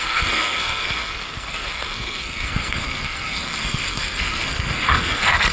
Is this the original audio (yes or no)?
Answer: no